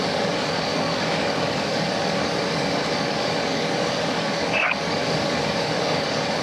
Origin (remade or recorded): remade